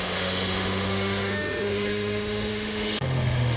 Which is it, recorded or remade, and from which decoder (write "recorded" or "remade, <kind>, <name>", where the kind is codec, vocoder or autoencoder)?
remade, autoencoder, DAC-VAE